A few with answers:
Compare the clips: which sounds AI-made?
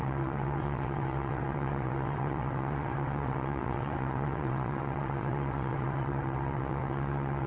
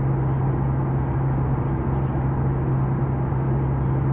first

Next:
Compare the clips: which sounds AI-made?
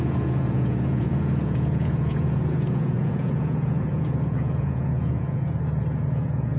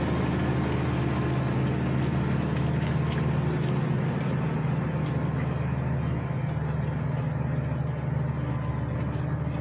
first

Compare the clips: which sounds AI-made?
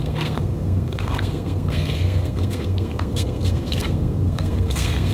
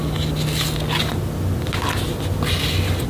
first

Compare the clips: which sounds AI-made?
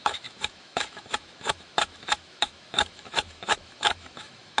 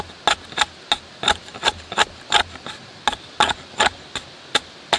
first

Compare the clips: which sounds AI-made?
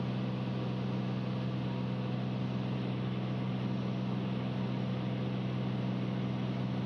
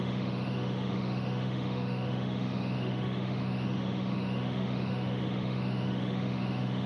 second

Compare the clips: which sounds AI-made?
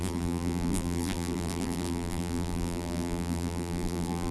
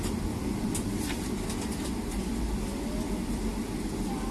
first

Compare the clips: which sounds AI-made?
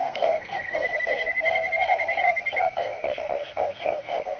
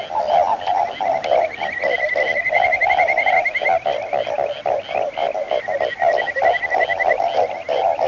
first